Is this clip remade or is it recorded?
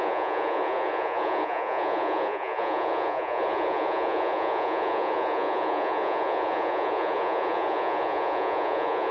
remade